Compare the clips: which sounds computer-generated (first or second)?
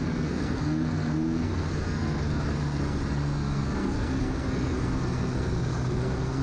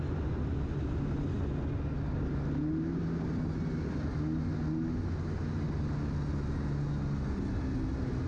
first